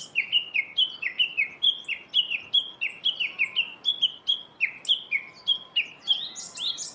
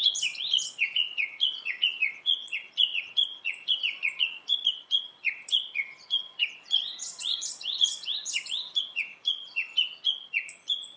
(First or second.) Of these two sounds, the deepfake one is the second